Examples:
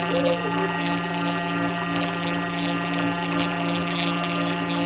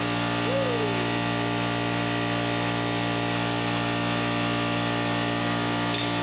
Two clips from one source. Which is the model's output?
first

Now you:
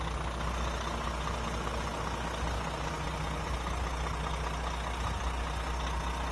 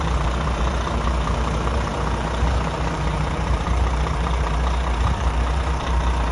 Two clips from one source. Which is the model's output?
second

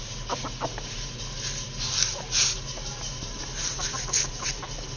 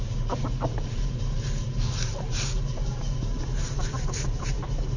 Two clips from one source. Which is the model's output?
second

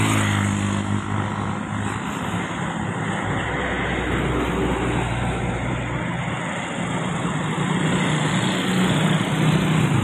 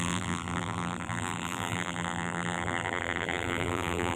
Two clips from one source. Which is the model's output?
second